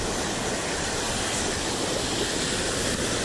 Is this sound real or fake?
real